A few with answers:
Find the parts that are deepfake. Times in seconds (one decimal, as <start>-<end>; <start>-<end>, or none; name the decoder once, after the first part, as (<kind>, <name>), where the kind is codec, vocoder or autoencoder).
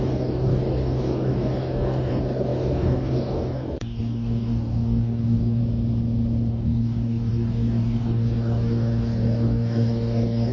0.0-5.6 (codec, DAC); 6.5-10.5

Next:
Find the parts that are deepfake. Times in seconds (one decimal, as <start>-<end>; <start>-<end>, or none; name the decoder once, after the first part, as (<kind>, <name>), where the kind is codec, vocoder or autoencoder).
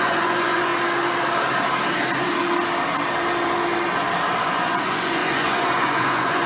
0.0-0.7 (vocoder, Vocos); 4.4-6.5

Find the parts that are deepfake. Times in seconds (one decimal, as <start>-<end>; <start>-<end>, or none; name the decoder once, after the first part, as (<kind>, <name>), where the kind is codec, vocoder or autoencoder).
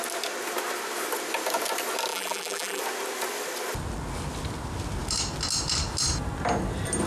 2.1-2.8 (vocoder, BigVGAN v2)